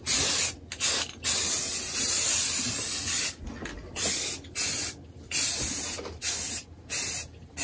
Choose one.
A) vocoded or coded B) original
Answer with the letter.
B